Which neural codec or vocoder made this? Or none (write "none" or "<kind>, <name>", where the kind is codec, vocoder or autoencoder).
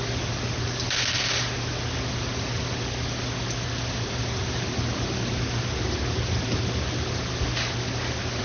none